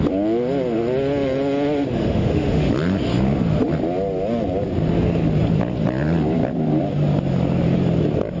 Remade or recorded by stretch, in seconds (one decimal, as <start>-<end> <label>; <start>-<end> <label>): 0.0-2.0 recorded; 2.0-2.7 remade; 2.7-8.4 recorded